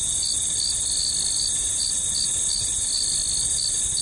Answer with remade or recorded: recorded